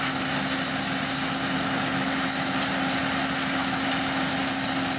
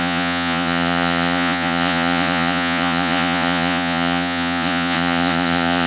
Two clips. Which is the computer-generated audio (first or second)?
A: second